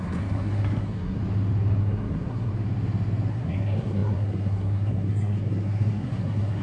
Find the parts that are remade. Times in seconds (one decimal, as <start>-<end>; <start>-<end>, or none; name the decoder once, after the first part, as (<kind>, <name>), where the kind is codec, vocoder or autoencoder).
0.0-1.2 (codec, SNAC); 1.8-2.5; 3.3-6.6